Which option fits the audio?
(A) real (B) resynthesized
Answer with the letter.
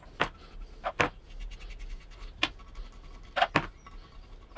A